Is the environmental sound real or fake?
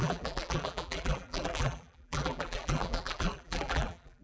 fake